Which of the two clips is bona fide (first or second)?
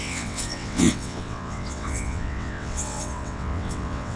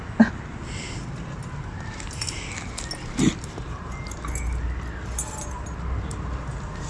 second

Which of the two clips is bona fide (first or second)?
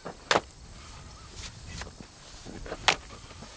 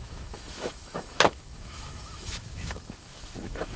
first